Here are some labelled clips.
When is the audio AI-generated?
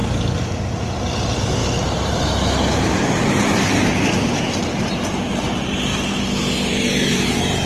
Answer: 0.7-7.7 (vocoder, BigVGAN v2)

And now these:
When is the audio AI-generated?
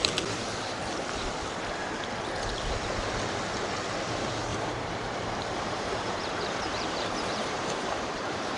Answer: 4.5-8.6 (vocoder, BigVGAN v2)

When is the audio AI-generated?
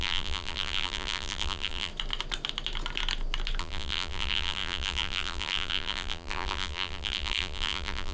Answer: 0.0-1.9 (vocoder, BigVGAN v2); 3.6-8.1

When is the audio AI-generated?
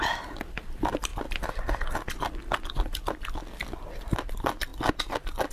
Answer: none